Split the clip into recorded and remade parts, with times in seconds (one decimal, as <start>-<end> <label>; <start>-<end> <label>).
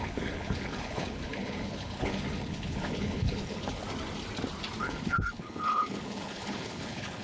0.0-3.8 remade; 3.8-4.8 recorded; 4.8-7.2 remade